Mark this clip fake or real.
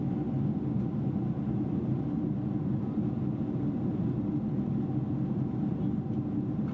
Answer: real